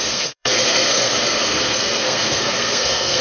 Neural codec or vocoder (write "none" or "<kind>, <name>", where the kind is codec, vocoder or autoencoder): codec, SNAC